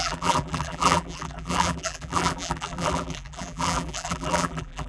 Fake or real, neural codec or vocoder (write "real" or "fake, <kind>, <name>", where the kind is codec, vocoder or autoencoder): fake, vocoder, BigVGAN v2